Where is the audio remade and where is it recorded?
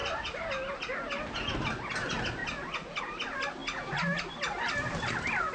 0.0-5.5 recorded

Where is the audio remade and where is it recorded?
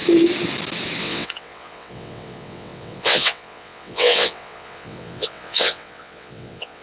0.0-1.0 recorded; 1.0-6.8 remade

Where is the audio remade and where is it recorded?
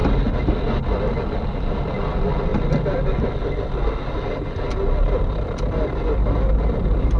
0.0-7.2 recorded